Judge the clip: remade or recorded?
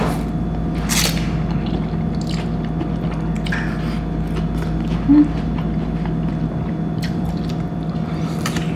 recorded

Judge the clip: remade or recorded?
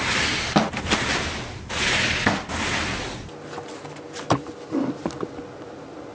recorded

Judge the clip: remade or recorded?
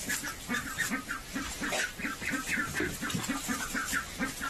recorded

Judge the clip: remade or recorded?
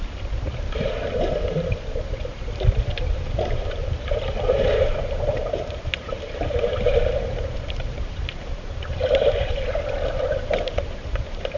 remade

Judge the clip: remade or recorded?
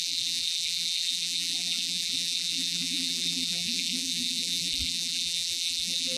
remade